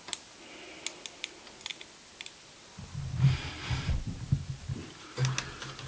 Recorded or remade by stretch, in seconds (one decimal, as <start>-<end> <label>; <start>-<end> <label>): 0.0-5.9 recorded